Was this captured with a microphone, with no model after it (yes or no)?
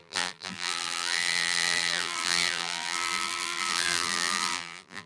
no